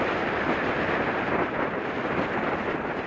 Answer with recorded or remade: recorded